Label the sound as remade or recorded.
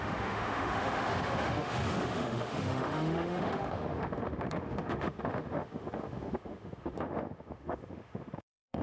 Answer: remade